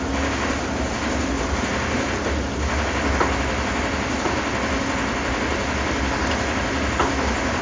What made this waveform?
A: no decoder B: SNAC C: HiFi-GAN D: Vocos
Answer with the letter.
A